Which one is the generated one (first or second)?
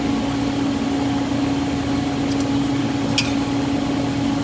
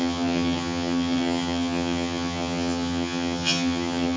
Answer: second